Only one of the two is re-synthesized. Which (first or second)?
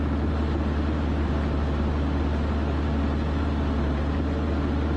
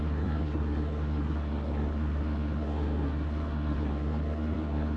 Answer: second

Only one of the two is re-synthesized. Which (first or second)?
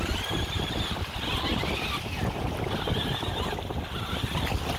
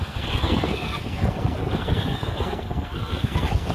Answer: second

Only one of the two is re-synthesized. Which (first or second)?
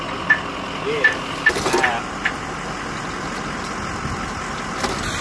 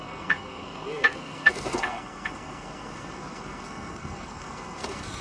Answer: second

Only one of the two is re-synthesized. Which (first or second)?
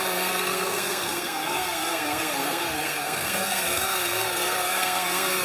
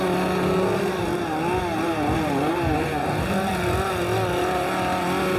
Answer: first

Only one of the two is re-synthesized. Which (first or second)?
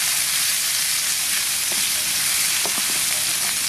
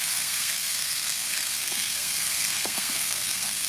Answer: second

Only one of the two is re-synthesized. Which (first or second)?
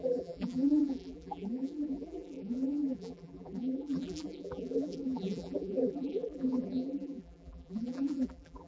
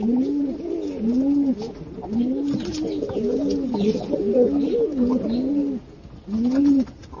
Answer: first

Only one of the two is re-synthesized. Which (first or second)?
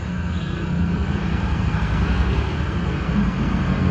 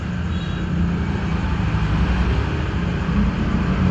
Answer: first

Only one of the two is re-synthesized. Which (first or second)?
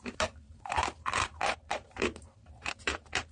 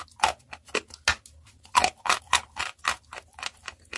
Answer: first